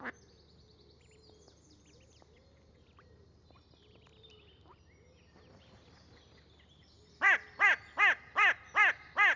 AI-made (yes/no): no